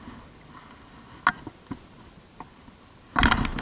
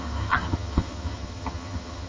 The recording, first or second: first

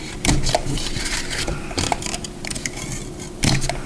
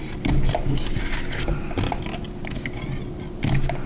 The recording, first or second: second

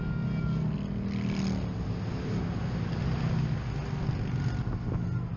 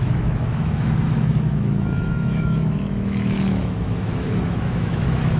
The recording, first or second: first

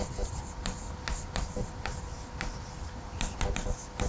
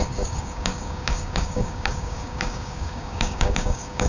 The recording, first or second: first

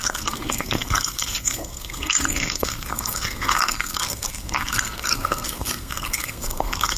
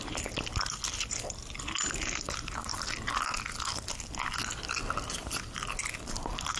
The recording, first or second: second